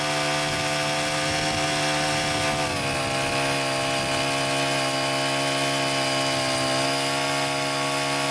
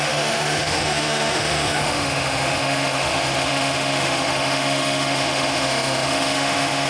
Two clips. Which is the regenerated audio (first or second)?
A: second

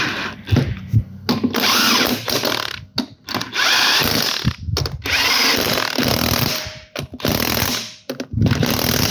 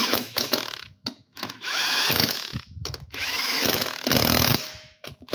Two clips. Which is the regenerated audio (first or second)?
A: second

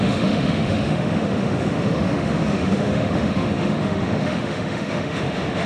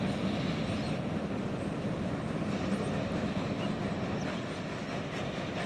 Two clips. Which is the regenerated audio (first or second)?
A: first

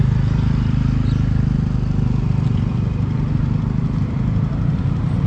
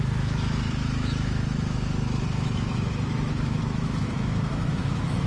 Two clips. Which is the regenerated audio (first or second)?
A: second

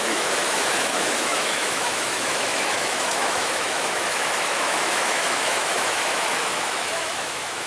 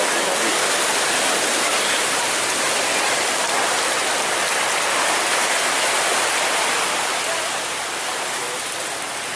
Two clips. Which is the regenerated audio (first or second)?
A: first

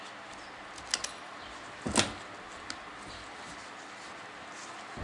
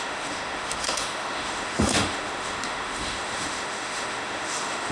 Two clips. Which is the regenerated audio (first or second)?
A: second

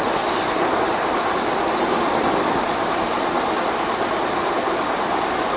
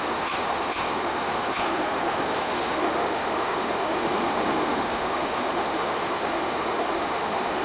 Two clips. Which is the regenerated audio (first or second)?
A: second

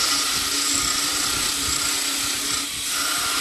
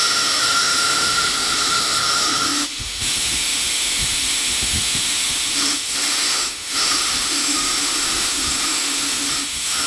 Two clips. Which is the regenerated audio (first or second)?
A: second